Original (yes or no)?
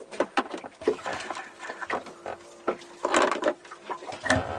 yes